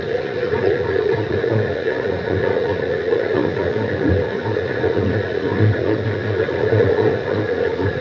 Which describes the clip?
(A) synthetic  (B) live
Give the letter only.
A